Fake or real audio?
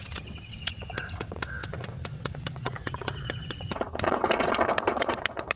fake